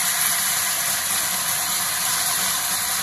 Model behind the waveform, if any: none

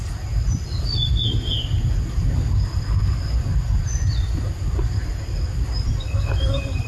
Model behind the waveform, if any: none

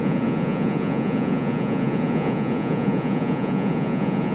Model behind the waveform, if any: vocoder, Vocos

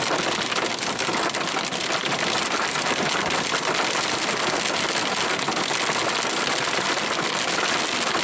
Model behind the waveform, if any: none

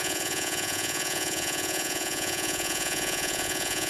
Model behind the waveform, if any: vocoder, Vocos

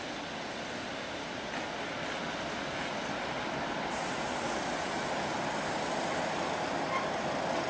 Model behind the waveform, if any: none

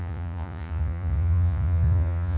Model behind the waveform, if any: vocoder, Vocos